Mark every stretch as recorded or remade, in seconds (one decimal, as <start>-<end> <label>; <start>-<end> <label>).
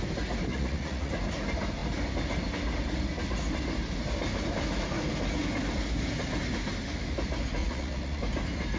0.0-0.5 recorded; 0.5-1.1 remade; 1.1-7.6 recorded; 7.6-8.2 remade; 8.2-8.8 recorded